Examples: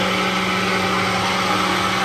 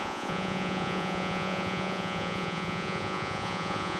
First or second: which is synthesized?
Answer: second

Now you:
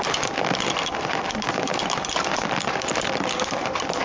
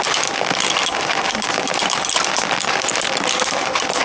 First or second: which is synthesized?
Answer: first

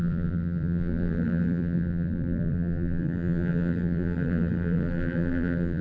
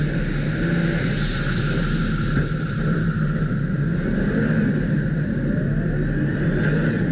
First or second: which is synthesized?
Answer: first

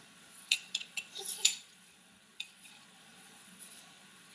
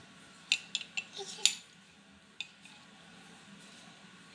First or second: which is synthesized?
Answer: first